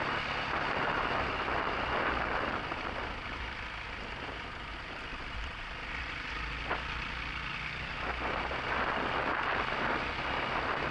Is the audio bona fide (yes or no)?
no